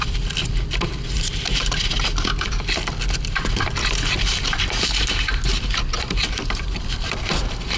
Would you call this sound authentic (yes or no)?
no